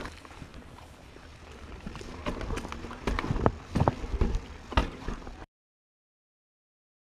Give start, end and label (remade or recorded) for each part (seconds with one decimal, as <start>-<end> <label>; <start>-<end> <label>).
0.0-4.8 recorded; 4.8-5.6 remade; 5.6-7.0 recorded